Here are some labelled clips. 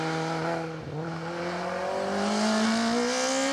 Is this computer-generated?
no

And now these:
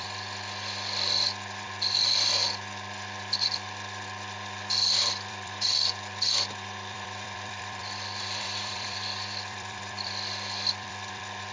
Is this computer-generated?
yes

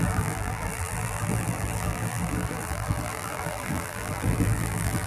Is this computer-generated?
yes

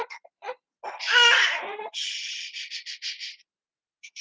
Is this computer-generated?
no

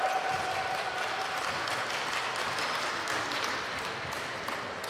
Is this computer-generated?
no